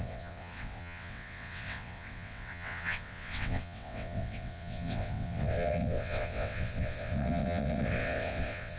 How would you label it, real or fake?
fake